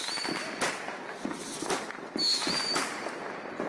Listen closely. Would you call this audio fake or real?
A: real